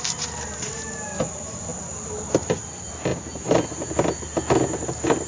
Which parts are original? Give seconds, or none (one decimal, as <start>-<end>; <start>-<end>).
0.0-5.3